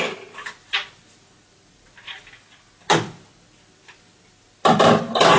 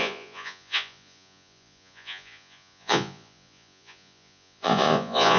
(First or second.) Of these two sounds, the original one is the first